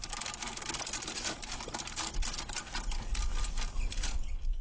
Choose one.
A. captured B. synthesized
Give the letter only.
A